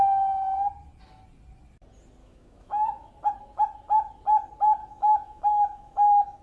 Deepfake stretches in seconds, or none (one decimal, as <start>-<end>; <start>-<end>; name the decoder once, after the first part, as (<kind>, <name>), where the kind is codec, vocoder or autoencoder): 2.2-3.1 (autoencoder, DAC-VAE); 4.8-6.4